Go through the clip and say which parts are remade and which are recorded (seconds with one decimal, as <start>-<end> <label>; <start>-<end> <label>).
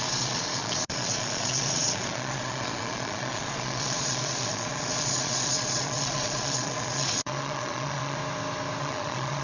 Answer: 0.0-8.2 remade; 8.2-8.8 recorded; 8.8-9.4 remade